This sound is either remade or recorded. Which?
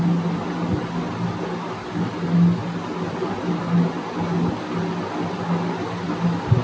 recorded